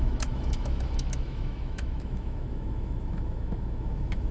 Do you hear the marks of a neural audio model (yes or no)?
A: yes